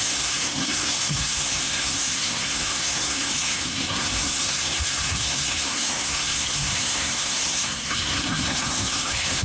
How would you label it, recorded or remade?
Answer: remade